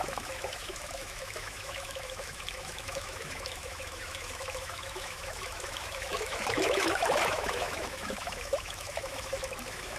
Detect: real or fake fake